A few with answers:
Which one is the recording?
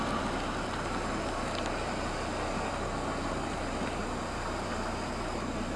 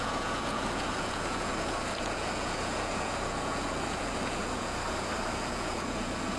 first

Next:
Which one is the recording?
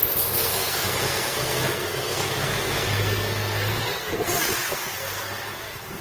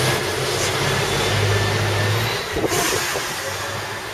second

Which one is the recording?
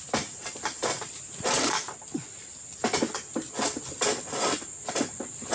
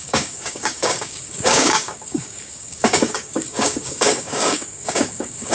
first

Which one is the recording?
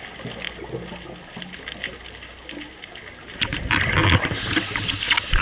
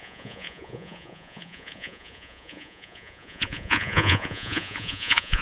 first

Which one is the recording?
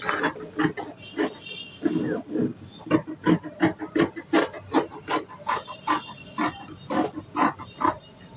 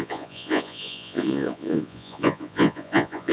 first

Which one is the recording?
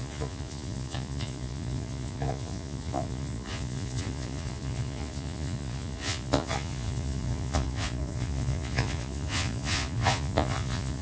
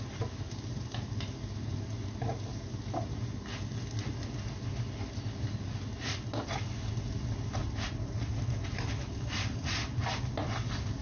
second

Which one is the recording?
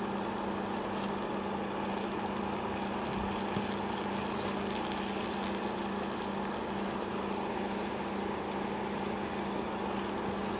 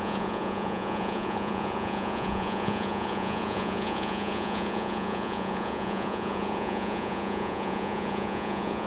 first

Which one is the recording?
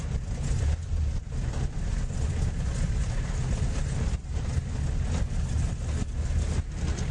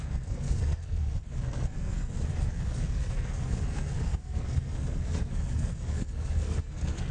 first